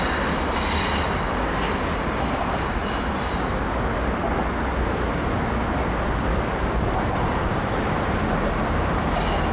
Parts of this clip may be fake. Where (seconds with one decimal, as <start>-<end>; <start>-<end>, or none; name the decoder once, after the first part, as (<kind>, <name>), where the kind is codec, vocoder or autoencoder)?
none